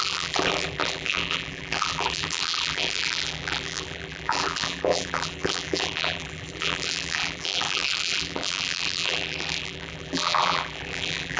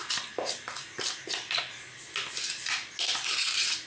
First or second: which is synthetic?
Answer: first